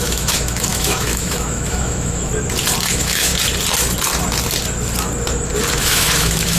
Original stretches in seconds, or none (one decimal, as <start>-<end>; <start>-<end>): 2.3-2.9; 3.3-5.8